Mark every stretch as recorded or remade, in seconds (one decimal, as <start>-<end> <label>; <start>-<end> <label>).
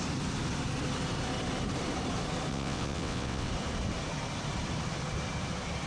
0.0-2.5 recorded; 2.5-3.5 remade; 3.5-5.9 recorded